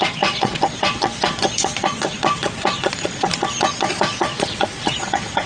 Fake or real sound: fake